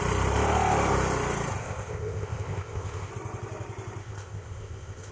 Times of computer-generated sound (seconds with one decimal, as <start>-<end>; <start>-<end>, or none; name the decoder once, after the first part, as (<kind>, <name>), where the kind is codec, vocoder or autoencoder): 1.6-3.1 (codec, ZipCodec); 4.0-5.1